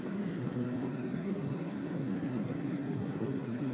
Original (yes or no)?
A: no